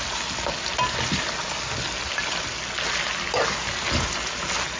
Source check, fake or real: real